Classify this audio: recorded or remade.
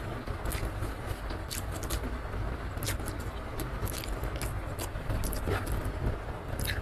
recorded